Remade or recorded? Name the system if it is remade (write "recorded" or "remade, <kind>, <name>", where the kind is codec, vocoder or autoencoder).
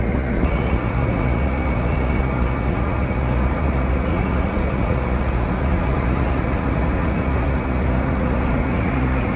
remade, vocoder, Vocos